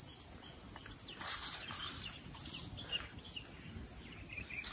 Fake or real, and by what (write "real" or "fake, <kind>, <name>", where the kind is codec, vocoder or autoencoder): real